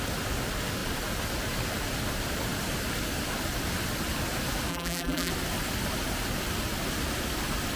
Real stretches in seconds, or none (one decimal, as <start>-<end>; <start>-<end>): 0.0-4.7; 5.3-7.8